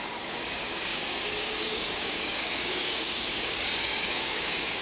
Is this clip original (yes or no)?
no